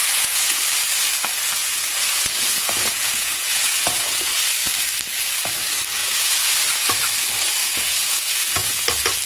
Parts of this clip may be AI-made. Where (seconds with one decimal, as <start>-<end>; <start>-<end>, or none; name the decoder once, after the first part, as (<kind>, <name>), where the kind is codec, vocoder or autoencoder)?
0.0-0.6 (vocoder, Vocos); 1.6-4.3; 6.0-6.5; 7.6-8.9